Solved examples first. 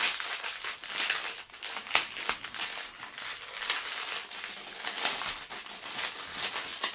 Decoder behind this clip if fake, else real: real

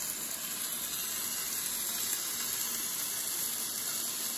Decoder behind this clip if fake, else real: real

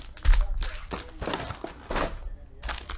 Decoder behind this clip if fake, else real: real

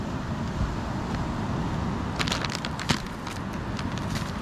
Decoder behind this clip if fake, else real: real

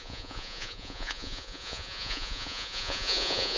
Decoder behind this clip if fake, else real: fake, vocoder, Vocos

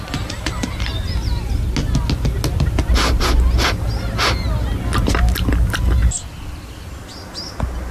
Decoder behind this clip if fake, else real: real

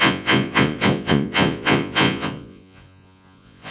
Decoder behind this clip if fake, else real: fake, vocoder, Vocos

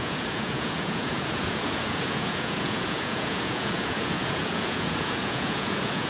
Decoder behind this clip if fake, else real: fake, vocoder, Vocos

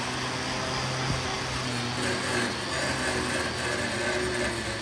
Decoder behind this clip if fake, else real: real